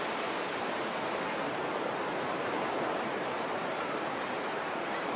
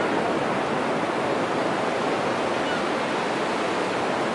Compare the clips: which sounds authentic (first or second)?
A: second